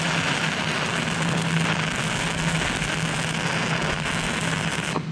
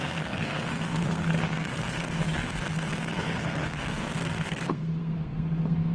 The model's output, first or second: second